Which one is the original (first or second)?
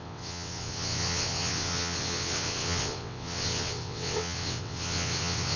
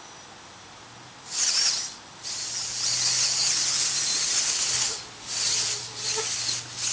second